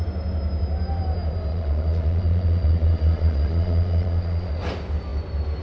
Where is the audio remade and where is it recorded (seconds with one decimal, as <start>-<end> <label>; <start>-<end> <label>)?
0.0-1.5 recorded; 1.5-4.5 remade; 4.5-5.6 recorded